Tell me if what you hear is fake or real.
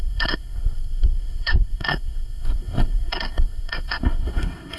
fake